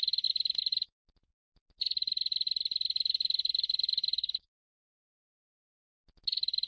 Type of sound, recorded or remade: recorded